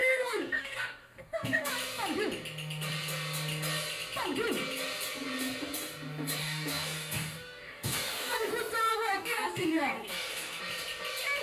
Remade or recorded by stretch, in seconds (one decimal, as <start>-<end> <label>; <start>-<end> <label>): 0.0-1.7 remade; 1.7-6.4 recorded; 6.4-8.5 remade; 8.5-8.9 recorded; 8.9-10.6 remade; 10.6-11.4 recorded